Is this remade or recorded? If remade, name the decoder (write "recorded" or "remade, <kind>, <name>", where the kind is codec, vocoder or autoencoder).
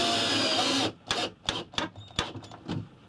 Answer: recorded